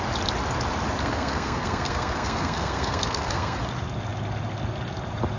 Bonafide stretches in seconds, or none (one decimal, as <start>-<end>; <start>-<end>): 0.0-1.0; 3.6-5.4